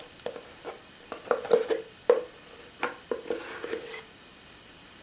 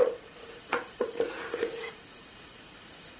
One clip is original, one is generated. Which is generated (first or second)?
second